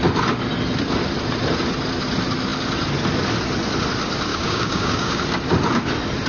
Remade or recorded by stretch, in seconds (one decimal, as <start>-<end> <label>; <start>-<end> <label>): 0.0-4.3 recorded; 4.3-5.2 remade; 5.2-6.3 recorded